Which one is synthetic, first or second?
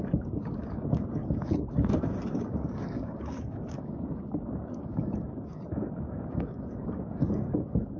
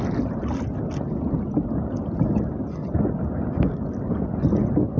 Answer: first